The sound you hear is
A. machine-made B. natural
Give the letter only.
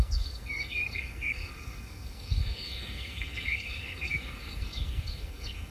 A